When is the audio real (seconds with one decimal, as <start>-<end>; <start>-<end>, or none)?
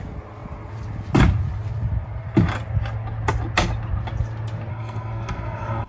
0.0-4.7